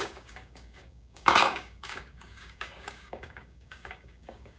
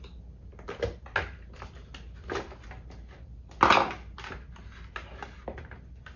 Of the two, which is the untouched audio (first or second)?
second